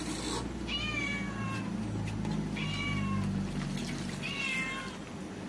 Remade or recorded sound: recorded